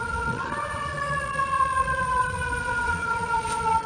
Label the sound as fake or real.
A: fake